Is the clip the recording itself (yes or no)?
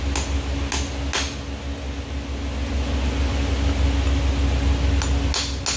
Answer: yes